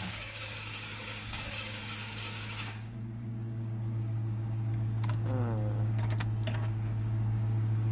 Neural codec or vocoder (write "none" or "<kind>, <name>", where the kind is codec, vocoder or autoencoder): codec, DAC